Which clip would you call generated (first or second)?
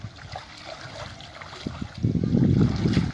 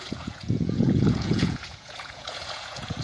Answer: second